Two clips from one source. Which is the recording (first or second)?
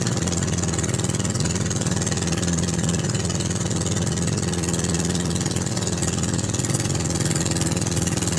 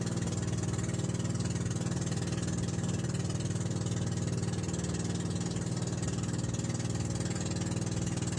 second